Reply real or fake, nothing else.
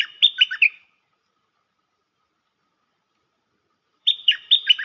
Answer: fake